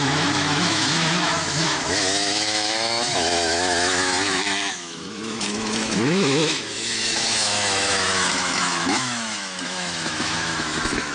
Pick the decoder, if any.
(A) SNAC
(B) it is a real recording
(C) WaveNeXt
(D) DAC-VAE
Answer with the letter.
D